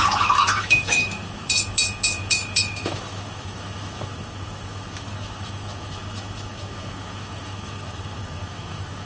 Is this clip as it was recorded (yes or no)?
no